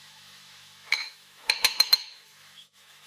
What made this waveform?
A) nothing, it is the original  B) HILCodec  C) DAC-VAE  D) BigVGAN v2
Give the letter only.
C